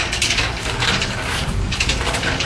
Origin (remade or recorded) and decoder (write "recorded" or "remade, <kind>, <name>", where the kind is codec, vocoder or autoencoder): remade, codec, DAC